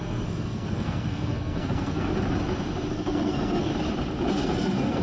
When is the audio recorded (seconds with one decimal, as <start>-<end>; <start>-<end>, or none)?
2.1-2.9; 3.7-4.3

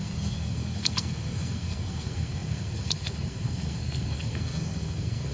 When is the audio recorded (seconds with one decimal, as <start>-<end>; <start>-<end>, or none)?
none